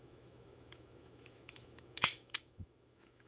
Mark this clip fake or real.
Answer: fake